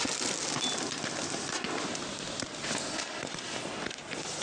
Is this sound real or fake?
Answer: real